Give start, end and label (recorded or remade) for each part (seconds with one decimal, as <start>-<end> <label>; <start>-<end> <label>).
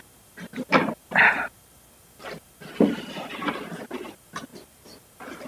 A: 0.0-4.5 recorded; 4.5-5.5 remade